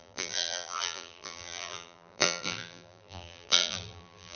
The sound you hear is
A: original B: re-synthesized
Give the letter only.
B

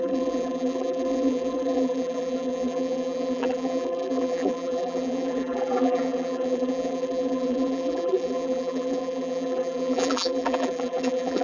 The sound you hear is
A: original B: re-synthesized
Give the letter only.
B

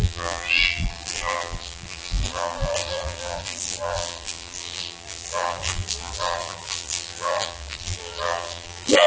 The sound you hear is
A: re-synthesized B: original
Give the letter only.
A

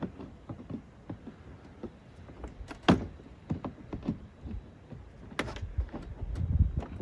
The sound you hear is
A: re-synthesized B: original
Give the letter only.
B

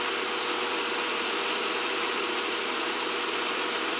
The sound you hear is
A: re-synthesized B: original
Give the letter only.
A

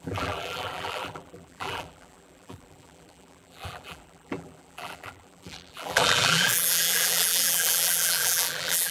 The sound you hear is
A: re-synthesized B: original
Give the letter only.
A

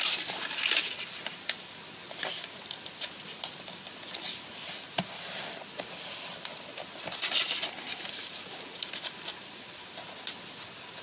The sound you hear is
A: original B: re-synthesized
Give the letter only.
A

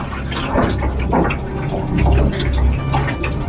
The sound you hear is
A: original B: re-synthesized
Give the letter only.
A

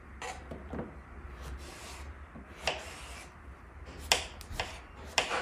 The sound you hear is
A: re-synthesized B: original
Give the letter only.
B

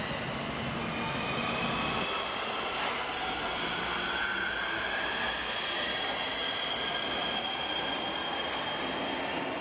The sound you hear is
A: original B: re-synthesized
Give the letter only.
A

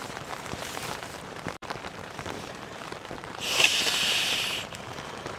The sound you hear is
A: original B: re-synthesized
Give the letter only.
B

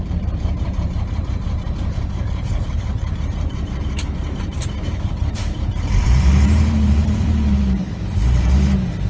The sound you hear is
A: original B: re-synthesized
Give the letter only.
B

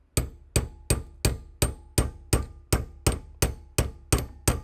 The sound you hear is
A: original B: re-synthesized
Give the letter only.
A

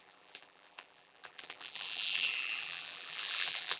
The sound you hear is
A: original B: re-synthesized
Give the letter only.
B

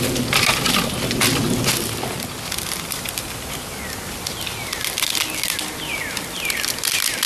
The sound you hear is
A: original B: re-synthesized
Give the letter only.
A